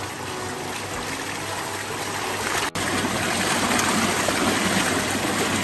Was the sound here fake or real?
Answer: real